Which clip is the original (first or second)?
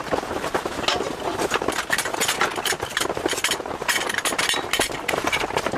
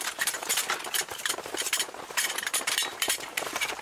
first